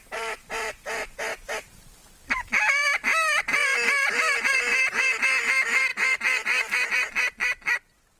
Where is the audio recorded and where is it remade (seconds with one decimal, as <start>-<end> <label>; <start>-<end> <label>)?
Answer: 0.0-3.1 remade; 3.1-4.4 recorded; 4.4-8.2 remade